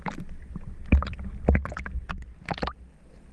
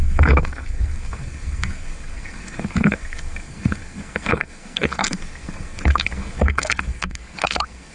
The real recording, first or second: first